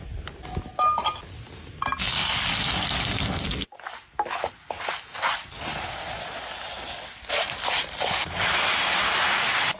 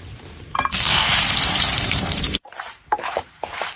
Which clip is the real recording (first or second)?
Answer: first